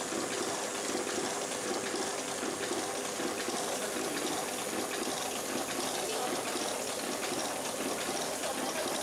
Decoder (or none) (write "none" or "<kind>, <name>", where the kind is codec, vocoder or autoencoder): none